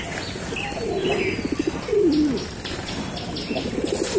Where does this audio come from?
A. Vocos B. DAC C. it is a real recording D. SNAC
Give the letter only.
C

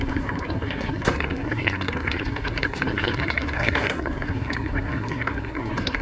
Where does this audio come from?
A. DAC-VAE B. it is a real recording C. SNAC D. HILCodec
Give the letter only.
C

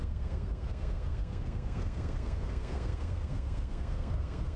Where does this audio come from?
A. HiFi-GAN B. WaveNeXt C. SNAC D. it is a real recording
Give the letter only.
C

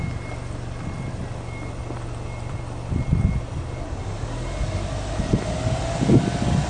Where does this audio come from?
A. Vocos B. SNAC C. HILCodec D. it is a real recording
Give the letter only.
D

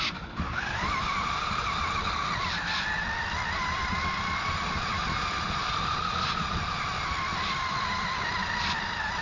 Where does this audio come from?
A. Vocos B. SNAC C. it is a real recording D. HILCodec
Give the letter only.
C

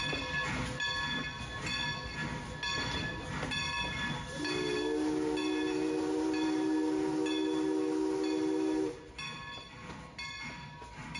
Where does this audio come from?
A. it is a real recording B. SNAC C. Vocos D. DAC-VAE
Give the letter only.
A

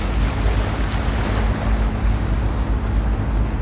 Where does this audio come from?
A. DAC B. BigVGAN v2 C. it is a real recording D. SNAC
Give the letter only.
C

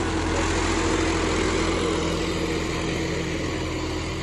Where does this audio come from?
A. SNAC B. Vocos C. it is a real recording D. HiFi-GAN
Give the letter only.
C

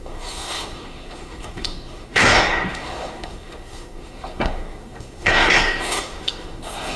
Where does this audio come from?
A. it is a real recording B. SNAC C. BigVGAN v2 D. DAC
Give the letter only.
B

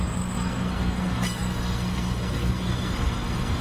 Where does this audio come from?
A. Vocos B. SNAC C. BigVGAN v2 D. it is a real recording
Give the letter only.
B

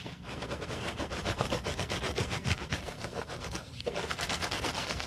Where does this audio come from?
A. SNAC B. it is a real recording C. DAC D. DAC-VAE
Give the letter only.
A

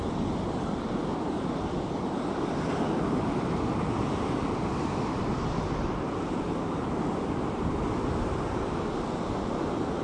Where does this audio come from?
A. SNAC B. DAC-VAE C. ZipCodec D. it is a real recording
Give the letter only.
D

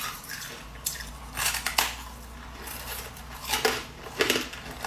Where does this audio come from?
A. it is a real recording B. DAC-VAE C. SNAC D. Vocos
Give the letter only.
A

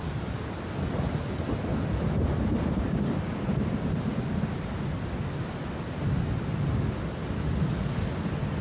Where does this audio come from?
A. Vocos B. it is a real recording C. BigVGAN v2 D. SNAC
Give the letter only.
B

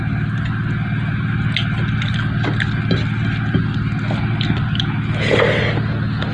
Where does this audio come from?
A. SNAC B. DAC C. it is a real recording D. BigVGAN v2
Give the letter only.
C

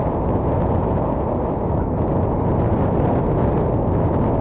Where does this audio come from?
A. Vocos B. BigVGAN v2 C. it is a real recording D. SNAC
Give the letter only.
C